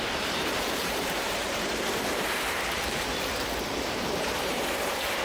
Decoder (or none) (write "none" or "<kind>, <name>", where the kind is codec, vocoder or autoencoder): vocoder, BigVGAN v2